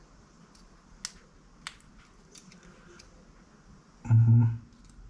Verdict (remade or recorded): recorded